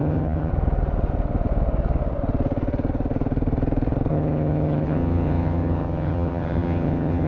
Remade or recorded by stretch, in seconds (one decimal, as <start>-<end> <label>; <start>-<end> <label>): 0.0-0.5 remade; 0.5-4.1 recorded; 4.1-7.3 remade